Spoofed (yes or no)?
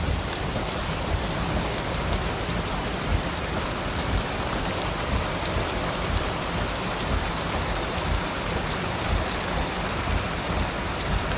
yes